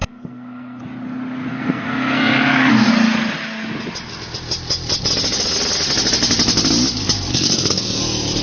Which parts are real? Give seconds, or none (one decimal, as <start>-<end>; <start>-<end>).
0.8-1.5; 2.9-7.3; 8.0-8.4